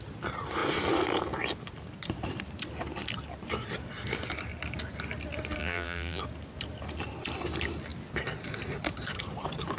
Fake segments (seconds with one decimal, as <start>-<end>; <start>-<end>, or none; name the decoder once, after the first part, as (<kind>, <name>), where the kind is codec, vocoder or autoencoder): 5.6-6.2 (vocoder, BigVGAN v2)